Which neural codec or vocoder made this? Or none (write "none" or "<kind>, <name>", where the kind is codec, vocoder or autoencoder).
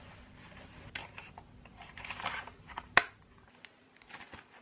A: none